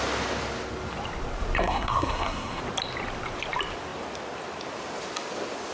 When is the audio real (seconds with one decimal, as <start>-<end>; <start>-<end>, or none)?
0.0-1.6; 2.6-5.7